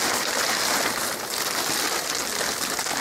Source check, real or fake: real